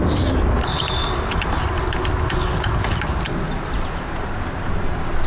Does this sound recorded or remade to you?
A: recorded